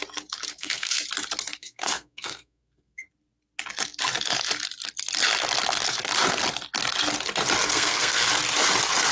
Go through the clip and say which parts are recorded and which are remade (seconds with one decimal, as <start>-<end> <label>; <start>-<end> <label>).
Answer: 0.0-0.5 recorded; 0.5-1.0 remade; 1.0-1.6 recorded; 1.6-3.1 remade; 3.1-7.7 recorded; 7.7-8.3 remade; 8.3-9.1 recorded